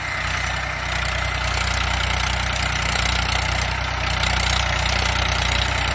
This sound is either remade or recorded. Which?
recorded